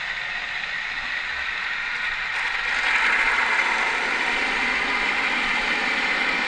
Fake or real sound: real